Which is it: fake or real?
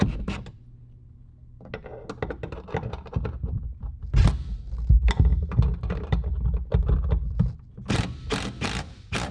real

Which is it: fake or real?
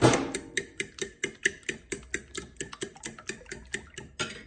real